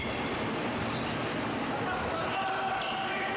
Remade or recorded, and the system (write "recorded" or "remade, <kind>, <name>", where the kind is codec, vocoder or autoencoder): recorded